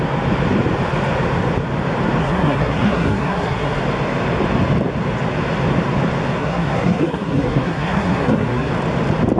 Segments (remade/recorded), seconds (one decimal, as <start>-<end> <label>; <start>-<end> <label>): 0.0-2.2 recorded; 2.2-3.8 remade; 3.8-6.4 recorded; 6.4-8.7 remade; 8.7-9.4 recorded